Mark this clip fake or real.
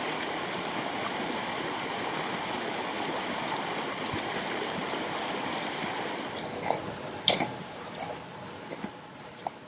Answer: real